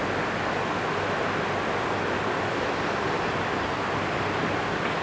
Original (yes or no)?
yes